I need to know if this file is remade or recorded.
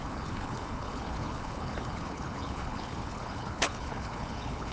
remade